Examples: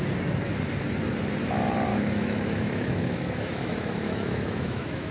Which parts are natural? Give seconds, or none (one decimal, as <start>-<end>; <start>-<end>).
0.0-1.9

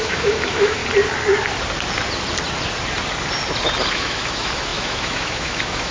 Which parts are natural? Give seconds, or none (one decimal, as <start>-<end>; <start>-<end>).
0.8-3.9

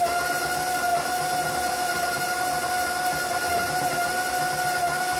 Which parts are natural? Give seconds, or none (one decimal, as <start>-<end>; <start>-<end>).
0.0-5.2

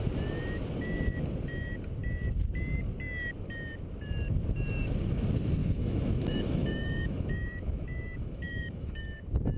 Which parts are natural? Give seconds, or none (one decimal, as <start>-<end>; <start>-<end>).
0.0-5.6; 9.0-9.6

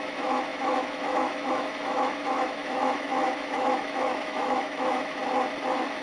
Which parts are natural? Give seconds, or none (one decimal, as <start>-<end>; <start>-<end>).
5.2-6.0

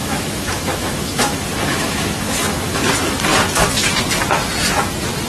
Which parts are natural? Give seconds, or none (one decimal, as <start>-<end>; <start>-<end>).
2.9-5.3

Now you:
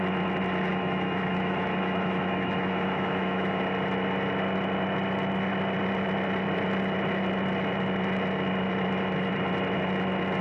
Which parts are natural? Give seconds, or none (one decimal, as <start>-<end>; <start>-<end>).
0.0-0.7; 3.6-10.4

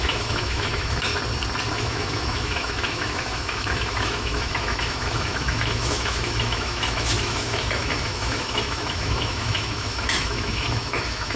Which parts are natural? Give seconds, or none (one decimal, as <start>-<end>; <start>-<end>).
1.1-1.7